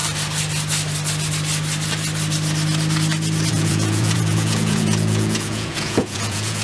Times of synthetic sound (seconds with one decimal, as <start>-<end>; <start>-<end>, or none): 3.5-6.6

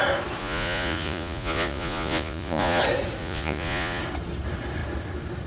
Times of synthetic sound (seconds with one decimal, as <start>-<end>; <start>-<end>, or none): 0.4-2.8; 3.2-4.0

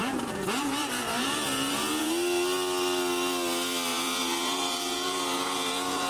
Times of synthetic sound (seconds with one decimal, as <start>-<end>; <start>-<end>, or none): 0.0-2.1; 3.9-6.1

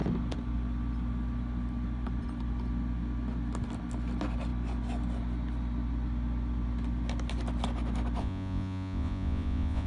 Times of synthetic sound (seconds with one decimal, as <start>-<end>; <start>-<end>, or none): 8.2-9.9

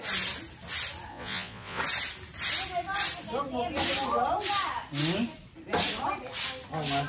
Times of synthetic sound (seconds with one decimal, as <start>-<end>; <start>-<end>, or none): 1.1-1.8

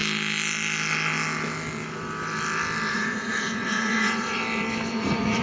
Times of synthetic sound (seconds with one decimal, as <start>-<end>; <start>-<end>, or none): 2.9-4.4; 4.9-5.4

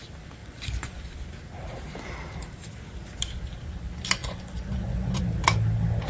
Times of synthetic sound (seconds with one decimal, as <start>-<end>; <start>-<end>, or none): 0.4-1.0; 4.2-5.2

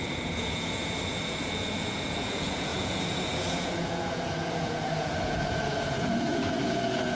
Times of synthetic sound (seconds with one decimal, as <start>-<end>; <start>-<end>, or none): 0.0-7.1